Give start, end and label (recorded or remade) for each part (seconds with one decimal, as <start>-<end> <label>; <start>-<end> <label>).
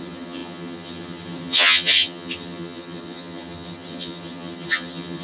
0.0-5.2 remade